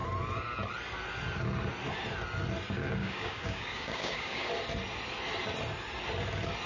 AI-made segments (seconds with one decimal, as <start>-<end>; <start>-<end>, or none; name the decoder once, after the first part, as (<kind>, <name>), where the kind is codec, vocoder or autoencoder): 3.0-4.5 (codec, DAC)